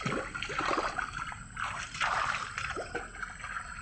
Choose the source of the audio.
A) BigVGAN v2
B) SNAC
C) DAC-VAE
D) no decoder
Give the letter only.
D